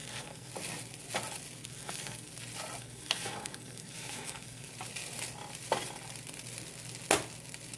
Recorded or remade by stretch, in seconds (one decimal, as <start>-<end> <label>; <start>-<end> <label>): 0.0-0.5 remade; 0.5-1.6 recorded; 1.6-2.3 remade; 2.3-2.8 recorded; 2.8-4.7 remade; 4.7-7.8 recorded

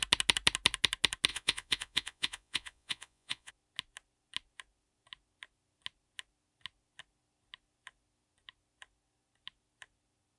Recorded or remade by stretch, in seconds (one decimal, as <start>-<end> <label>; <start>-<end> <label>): 0.0-1.3 recorded; 1.3-3.5 remade; 3.5-10.4 recorded

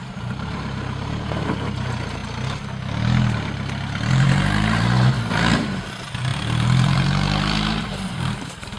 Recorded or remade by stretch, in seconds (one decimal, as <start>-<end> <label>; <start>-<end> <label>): 0.0-2.2 remade; 2.2-4.1 recorded; 4.1-8.8 remade

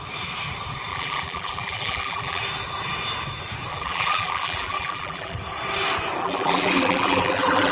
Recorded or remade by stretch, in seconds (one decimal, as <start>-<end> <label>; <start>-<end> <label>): 0.0-0.9 recorded; 0.9-2.4 remade; 2.4-3.7 recorded; 3.7-5.4 remade; 5.4-6.2 recorded; 6.2-7.7 remade

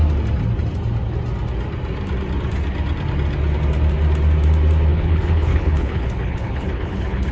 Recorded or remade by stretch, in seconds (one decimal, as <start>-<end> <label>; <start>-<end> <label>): 0.0-4.9 recorded; 4.9-7.3 remade

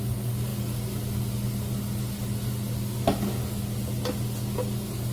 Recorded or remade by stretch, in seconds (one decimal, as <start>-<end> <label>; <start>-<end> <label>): 0.0-5.1 recorded

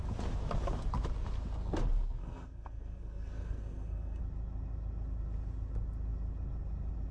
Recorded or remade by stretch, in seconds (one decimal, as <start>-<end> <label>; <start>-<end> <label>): 0.0-2.2 recorded; 2.2-4.2 remade; 4.2-7.1 recorded